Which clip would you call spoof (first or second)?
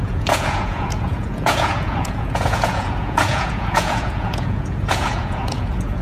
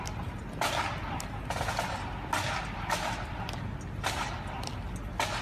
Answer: first